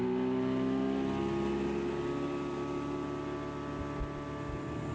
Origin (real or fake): real